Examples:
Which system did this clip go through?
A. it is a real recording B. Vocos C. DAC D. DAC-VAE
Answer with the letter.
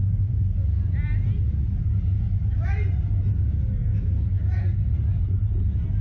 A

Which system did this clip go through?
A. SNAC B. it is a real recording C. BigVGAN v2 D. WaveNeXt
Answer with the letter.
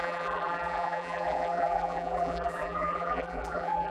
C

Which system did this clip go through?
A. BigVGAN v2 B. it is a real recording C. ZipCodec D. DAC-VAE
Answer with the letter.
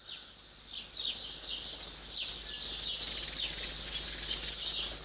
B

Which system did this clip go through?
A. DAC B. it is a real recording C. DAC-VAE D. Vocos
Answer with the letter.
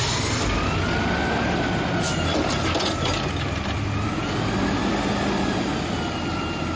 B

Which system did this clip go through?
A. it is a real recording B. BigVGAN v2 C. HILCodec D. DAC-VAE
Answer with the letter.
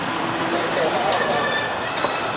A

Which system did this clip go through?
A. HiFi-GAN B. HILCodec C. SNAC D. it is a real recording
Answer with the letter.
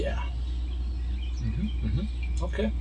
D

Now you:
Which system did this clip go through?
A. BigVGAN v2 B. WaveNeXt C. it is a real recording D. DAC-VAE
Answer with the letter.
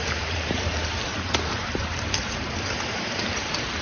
A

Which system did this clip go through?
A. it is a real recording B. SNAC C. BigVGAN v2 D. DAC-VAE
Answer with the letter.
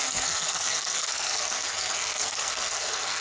B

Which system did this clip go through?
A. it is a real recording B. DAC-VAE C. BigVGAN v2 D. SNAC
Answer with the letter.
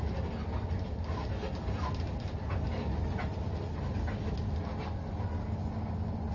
A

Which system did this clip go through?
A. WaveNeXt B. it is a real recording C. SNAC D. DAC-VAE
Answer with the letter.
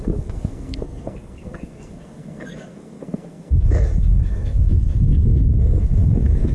C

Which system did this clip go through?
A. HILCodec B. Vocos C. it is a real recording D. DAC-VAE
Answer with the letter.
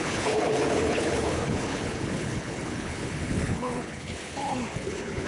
A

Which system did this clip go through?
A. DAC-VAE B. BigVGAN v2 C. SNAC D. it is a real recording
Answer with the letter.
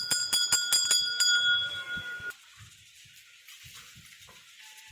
D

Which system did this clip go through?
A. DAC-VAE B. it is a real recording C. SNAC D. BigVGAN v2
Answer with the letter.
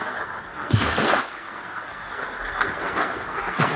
C